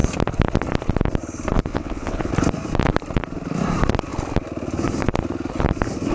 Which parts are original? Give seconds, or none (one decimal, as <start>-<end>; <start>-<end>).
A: 0.0-1.7; 2.3-6.1

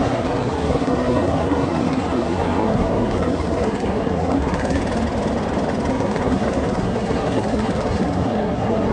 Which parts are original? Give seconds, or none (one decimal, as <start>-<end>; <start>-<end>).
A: 4.8-5.9

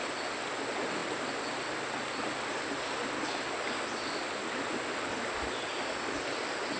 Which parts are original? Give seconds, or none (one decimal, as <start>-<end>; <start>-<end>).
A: 0.0-6.8

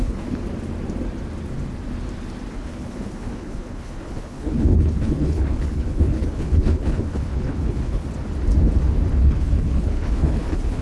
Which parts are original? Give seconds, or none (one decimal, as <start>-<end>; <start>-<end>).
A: 0.4-2.5; 8.1-9.1